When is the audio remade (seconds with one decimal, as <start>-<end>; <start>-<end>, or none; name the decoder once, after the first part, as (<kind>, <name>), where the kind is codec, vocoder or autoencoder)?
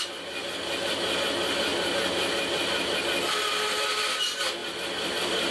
4.6-5.5 (vocoder, BigVGAN v2)